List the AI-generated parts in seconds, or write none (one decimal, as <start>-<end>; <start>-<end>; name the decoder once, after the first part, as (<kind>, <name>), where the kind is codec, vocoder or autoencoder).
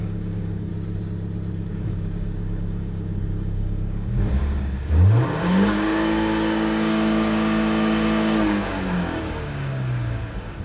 0.0-0.7 (codec, DAC); 1.7-10.6